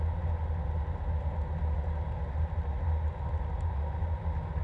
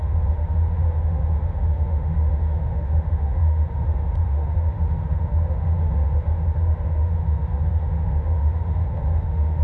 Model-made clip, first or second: second